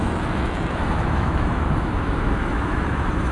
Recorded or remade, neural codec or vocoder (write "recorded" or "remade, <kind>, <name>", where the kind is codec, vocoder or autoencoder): remade, autoencoder, DAC-VAE